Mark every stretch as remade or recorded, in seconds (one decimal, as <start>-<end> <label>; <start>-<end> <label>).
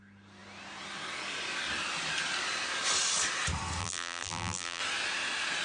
0.0-3.8 recorded; 3.8-4.8 remade; 4.8-5.6 recorded